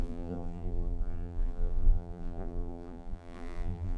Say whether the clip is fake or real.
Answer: fake